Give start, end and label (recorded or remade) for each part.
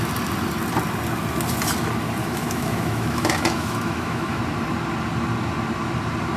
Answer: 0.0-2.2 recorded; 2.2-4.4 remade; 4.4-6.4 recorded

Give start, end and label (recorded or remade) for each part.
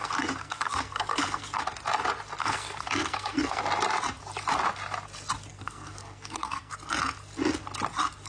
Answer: 0.0-1.6 remade; 1.6-2.4 recorded; 2.4-3.6 remade; 3.6-5.5 recorded; 5.5-6.7 remade; 6.7-8.3 recorded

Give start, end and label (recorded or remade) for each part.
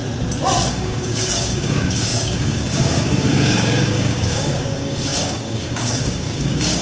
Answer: 0.0-0.7 recorded; 0.7-6.8 remade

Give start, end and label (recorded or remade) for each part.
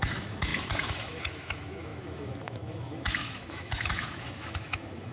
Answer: 0.0-5.1 remade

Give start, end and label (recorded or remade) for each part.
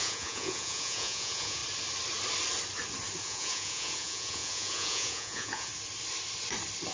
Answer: 0.0-1.6 remade; 1.6-3.2 recorded; 3.2-5.7 remade; 5.7-6.9 recorded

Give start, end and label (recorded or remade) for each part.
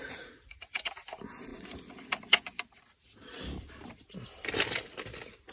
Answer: 0.0-0.9 remade; 0.9-5.5 recorded